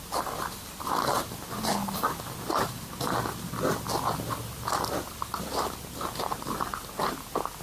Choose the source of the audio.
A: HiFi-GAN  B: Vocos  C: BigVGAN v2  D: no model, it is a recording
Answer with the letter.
D